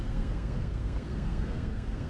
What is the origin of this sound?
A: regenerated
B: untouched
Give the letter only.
A